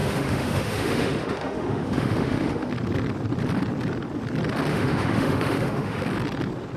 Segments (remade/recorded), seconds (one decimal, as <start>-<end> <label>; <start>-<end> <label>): 0.0-2.7 remade; 2.7-4.7 recorded; 4.7-6.0 remade; 6.0-6.8 recorded